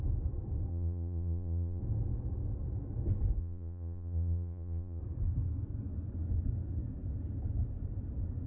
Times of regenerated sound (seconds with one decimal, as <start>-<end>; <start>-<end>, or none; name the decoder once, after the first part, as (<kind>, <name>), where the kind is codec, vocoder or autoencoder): 0.7-1.8 (vocoder, Vocos); 3.4-5.0